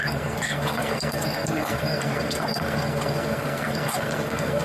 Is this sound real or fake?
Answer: fake